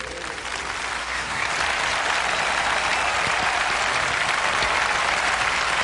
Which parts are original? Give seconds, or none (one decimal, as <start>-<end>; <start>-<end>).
0.0-1.0; 1.5-5.8